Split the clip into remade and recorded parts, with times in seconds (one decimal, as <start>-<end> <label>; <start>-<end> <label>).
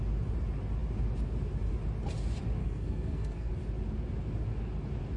0.0-2.6 recorded; 2.6-3.5 remade; 3.5-5.2 recorded